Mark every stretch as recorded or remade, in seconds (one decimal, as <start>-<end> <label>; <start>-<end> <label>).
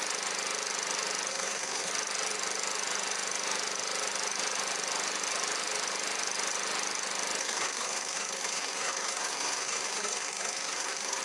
0.0-1.3 recorded; 1.3-1.9 remade; 1.9-7.4 recorded; 7.4-11.2 remade